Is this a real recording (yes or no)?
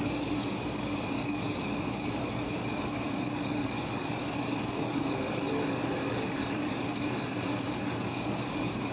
no